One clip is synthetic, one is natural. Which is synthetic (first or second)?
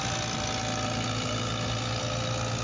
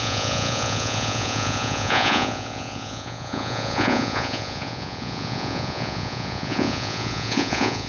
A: second